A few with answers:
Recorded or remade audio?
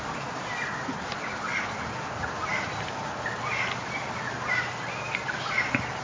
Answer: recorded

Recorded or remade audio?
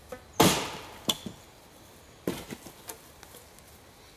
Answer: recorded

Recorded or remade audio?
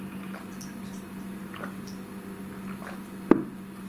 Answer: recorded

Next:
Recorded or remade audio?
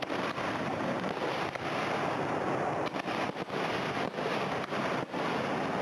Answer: recorded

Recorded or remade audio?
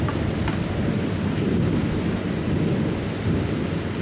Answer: recorded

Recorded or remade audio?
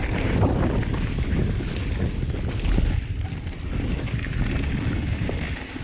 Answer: recorded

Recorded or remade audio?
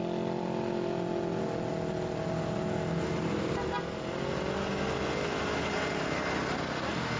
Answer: recorded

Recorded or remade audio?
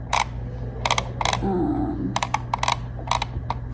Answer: recorded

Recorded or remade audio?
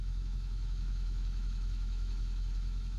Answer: remade